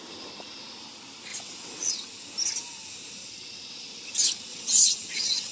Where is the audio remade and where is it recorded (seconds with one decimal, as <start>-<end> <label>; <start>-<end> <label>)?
0.0-1.3 recorded; 1.3-1.9 remade; 1.9-3.2 recorded; 3.2-3.7 remade; 3.7-4.5 recorded; 4.5-5.5 remade